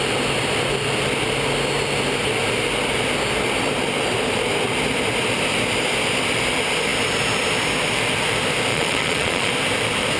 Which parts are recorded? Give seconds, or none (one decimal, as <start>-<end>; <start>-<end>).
0.0-8.7; 9.5-10.2